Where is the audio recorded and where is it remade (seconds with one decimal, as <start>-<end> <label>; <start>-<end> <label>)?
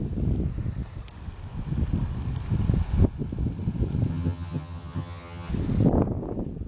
0.0-4.1 recorded; 4.1-5.5 remade; 5.5-6.7 recorded